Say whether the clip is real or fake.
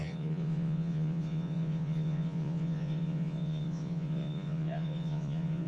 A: fake